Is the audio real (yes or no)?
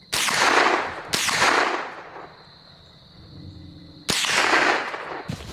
yes